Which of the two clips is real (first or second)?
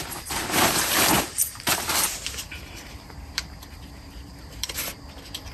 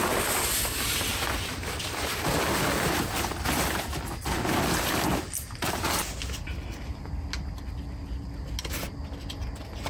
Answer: second